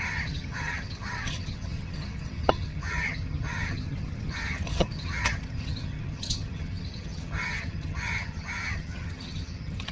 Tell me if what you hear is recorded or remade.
remade